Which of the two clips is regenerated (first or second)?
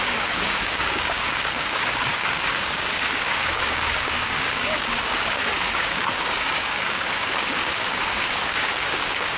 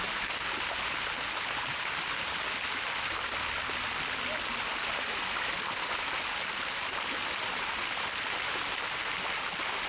first